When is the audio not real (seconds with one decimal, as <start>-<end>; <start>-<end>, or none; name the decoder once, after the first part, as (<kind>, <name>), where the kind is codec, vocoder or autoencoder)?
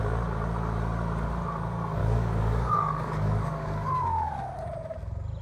2.0-4.3 (codec, DAC)